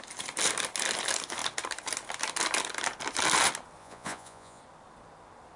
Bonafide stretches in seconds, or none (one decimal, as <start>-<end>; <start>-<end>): 0.0-3.8; 4.6-5.6